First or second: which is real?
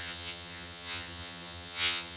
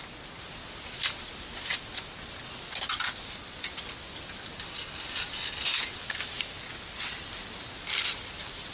second